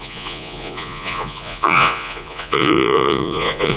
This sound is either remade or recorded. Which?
remade